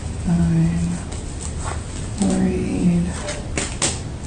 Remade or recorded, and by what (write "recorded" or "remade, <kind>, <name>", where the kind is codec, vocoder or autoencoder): recorded